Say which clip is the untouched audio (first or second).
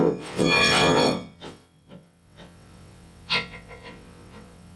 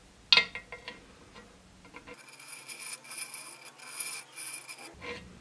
second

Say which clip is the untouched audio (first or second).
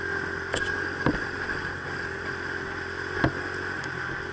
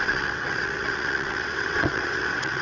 first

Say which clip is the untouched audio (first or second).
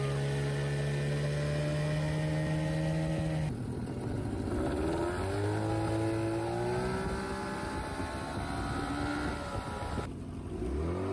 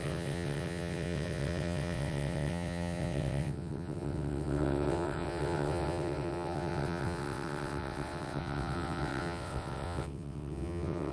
first